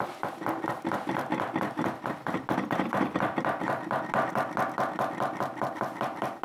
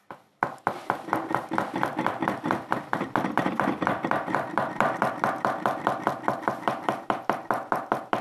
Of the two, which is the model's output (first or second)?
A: second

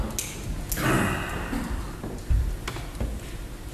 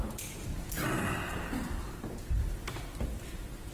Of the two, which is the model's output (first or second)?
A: second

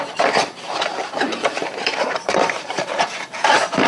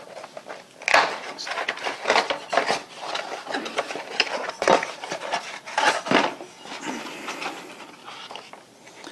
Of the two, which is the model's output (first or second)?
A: first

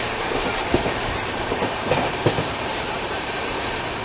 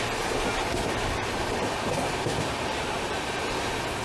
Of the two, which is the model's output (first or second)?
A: first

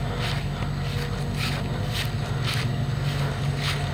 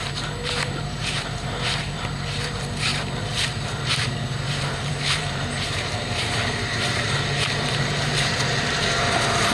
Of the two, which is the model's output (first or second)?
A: second